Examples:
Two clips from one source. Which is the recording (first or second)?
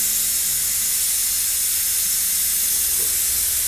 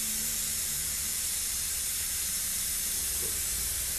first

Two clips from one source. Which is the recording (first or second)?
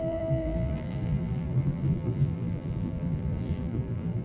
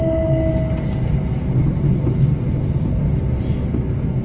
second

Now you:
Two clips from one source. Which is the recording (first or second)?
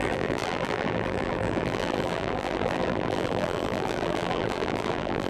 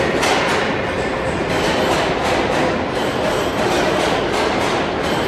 second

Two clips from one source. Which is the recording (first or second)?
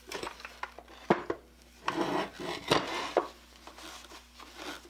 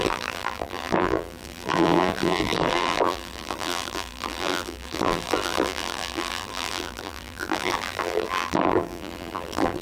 first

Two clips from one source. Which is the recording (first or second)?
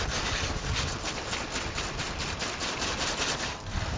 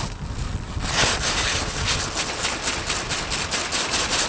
second